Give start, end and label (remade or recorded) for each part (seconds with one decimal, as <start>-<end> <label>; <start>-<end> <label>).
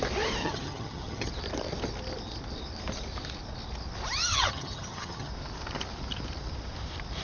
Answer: 0.0-0.4 recorded; 0.4-1.3 remade; 1.3-4.3 recorded; 4.3-5.3 remade; 5.3-7.2 recorded